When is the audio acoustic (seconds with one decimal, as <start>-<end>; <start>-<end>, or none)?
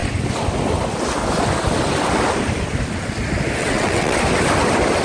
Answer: 0.0-3.6; 4.2-5.0